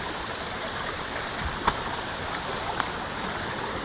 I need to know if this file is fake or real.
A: real